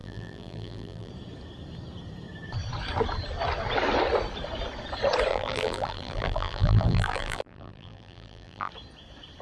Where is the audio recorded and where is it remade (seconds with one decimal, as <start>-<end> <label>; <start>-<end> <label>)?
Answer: 0.0-1.1 remade; 1.1-5.3 recorded; 5.3-8.7 remade; 8.7-9.4 recorded